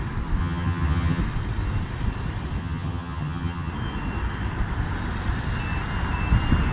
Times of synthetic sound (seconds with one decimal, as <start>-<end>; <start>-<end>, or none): 0.4-1.2; 2.6-3.7